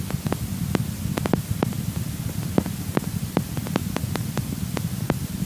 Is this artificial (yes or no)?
no